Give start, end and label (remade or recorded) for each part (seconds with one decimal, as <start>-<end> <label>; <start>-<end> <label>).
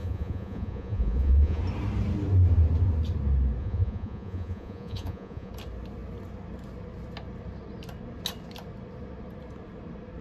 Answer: 0.0-1.6 remade; 1.6-3.6 recorded; 3.6-5.5 remade; 5.5-10.2 recorded